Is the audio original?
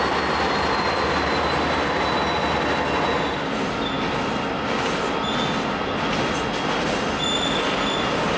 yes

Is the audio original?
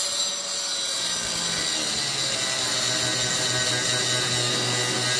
yes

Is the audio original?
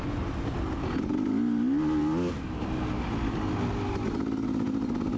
yes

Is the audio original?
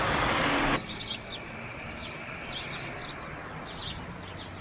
yes